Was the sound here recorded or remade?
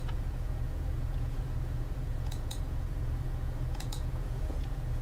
remade